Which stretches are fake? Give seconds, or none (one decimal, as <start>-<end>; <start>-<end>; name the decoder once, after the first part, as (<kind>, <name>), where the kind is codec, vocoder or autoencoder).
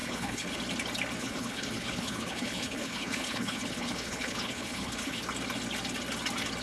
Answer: 0.0-0.6 (codec, HILCodec); 1.2-5.2